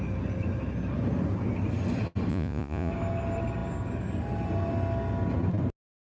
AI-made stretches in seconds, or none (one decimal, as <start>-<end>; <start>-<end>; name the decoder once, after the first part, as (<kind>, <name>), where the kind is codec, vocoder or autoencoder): 2.3-2.9 (vocoder, Vocos)